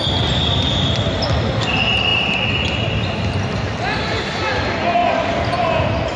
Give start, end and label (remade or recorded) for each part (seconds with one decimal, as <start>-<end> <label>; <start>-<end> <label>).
0.0-6.2 recorded